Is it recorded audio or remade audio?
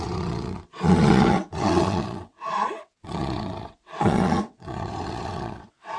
remade